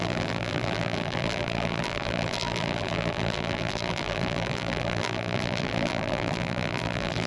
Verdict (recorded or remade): remade